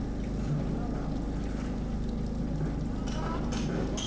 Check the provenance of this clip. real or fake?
real